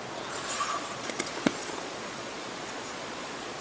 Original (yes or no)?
no